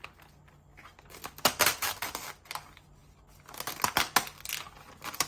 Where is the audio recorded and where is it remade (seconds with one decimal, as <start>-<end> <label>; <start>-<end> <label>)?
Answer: 0.0-5.3 recorded